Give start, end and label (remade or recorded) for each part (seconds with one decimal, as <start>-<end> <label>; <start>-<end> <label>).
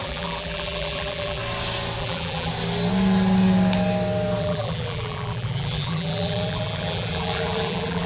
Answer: 0.0-1.4 remade; 1.4-2.0 recorded; 2.0-2.5 remade; 2.5-4.4 recorded; 4.4-8.1 remade